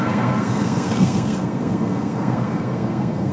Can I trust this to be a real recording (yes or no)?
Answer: no